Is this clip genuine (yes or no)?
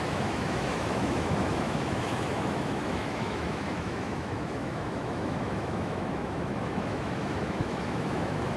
no